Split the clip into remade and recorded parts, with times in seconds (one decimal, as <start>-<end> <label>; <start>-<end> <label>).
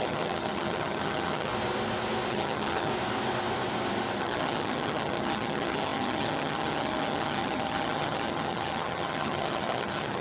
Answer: 0.0-1.5 remade; 1.5-2.3 recorded; 2.3-2.9 remade; 2.9-4.2 recorded; 4.2-10.2 remade